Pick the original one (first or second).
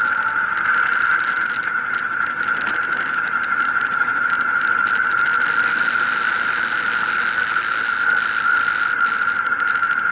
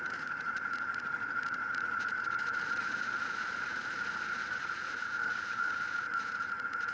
first